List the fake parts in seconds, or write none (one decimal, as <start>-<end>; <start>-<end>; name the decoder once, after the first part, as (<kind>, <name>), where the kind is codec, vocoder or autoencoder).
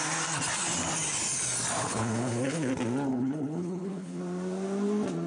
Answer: 1.8-2.7 (codec, HILCodec); 3.1-4.2